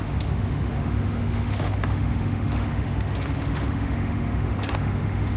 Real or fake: fake